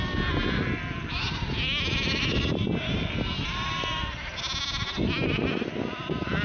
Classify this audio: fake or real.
real